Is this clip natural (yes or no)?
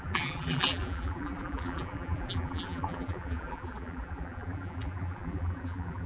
no